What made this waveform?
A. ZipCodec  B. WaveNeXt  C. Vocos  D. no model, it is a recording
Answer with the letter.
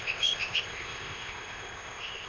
A